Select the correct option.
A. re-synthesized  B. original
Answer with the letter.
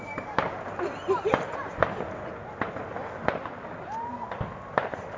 B